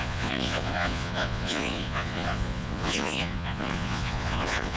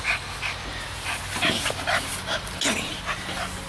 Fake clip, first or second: first